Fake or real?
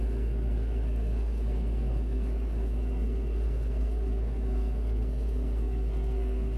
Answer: fake